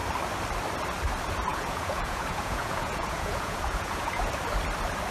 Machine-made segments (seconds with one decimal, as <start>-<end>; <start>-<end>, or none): 1.5-4.3